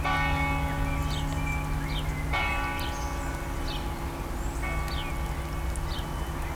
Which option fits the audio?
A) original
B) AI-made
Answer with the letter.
A